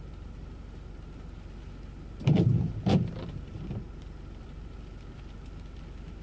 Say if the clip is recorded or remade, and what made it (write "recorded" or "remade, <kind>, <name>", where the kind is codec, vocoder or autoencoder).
remade, vocoder, BigVGAN v2